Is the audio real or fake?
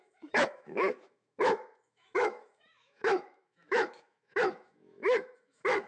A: fake